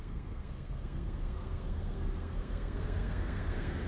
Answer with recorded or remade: remade